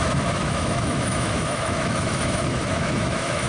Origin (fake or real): fake